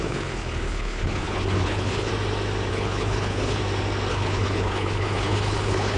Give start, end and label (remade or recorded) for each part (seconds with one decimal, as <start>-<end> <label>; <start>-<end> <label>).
0.0-2.1 remade; 2.1-2.7 recorded; 2.7-3.6 remade; 3.6-4.1 recorded; 4.1-6.0 remade